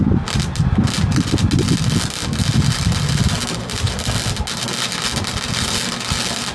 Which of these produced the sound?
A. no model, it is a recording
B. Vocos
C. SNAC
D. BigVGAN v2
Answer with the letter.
A